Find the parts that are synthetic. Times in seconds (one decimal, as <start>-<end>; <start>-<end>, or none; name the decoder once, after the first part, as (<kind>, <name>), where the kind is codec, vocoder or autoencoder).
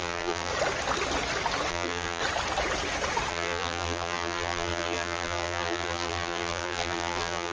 0.0-0.5 (vocoder, BigVGAN v2); 1.7-2.2; 3.3-7.5